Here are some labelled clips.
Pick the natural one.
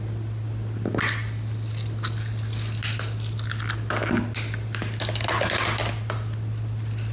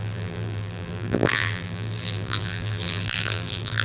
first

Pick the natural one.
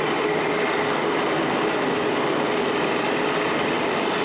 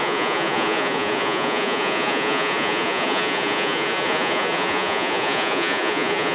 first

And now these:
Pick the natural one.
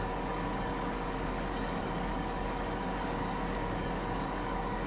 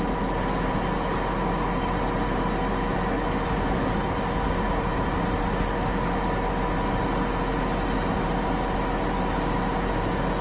second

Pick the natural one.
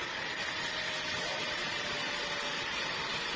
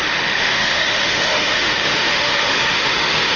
first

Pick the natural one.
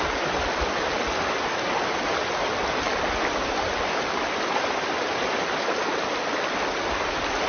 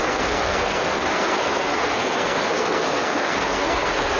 first